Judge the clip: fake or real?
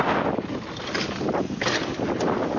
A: real